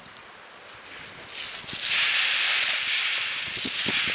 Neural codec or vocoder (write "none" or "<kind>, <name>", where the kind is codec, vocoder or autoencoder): none